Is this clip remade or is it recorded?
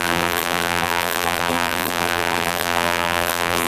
remade